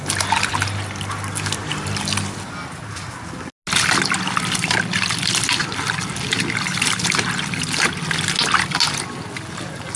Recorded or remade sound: recorded